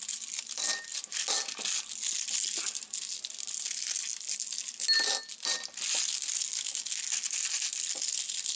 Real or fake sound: real